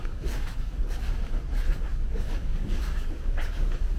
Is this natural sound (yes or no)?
no